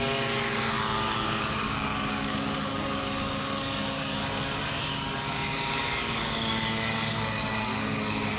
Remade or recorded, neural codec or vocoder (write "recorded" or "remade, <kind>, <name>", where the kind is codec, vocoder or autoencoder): remade, codec, DAC